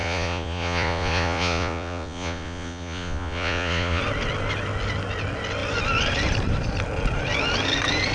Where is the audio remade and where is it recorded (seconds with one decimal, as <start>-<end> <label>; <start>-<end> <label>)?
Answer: 0.0-4.0 remade; 4.0-8.1 recorded